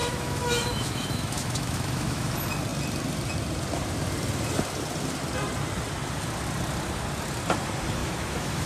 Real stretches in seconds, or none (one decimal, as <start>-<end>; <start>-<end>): 2.3-8.0